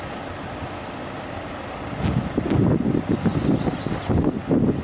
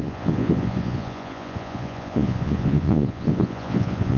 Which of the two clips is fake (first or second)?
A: second